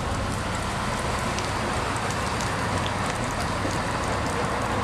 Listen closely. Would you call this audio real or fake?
real